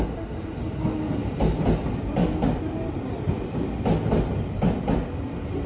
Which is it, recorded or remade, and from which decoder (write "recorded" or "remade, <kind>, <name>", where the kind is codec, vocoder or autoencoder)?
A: recorded